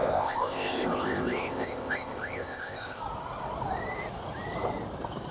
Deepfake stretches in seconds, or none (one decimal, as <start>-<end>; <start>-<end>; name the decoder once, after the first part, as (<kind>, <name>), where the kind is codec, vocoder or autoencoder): 0.0-3.0 (codec, ZipCodec)